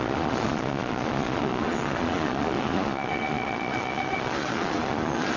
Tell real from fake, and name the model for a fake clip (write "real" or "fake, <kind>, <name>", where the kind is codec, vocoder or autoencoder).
fake, vocoder, Vocos